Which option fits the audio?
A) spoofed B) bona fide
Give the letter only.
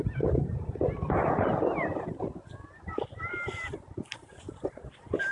A